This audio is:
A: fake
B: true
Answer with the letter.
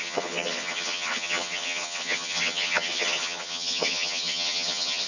A